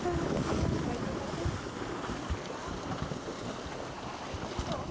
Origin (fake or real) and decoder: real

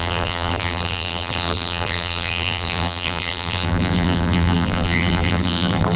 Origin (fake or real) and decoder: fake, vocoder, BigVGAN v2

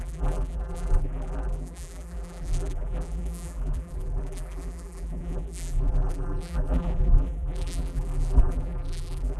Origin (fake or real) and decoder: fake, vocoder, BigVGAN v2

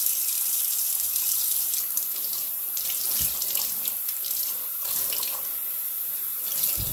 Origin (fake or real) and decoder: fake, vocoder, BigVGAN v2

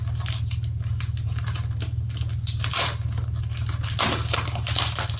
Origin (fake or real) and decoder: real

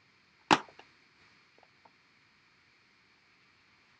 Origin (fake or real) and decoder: real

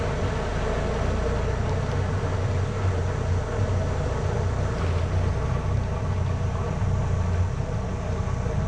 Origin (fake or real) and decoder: real